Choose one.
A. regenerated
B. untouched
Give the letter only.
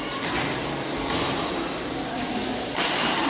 B